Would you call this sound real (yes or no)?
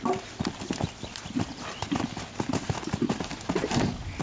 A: yes